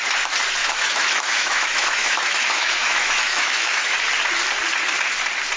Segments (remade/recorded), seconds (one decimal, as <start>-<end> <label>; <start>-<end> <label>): 0.0-0.6 recorded; 0.6-4.0 remade; 4.0-5.6 recorded